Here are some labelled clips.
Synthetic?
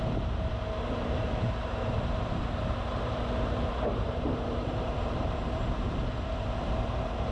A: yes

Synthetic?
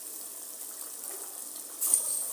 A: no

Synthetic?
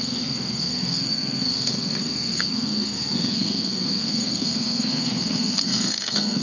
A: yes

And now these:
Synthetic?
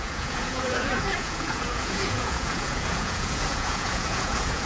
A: yes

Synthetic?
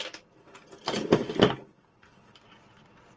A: no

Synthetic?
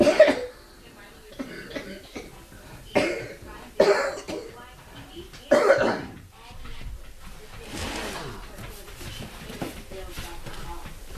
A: no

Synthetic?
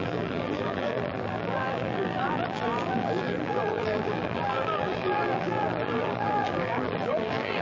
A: yes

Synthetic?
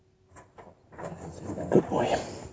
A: no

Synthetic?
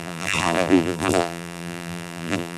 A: yes